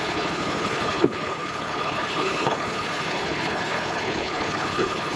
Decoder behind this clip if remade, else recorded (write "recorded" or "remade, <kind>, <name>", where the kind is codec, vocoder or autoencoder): remade, codec, HILCodec